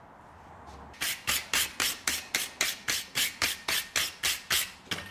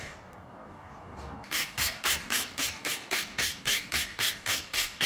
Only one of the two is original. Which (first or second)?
first